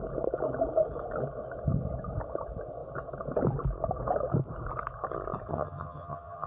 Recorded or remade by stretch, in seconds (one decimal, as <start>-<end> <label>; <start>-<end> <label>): 0.0-5.5 recorded; 5.5-6.5 remade